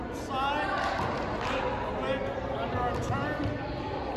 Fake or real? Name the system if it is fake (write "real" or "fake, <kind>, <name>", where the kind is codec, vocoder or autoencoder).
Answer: real